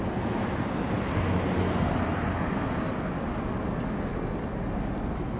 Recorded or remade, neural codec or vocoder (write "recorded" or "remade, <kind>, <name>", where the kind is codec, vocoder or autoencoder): recorded